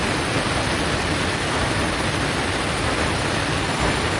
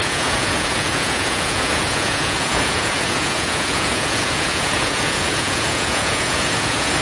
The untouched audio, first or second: first